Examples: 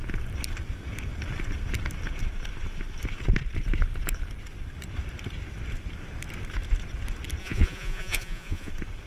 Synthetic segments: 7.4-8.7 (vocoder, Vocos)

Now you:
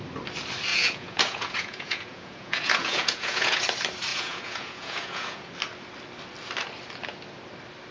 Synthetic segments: 0.7-3.6 (vocoder, Vocos); 4.1-5.5